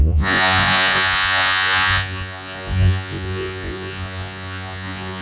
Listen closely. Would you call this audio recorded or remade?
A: remade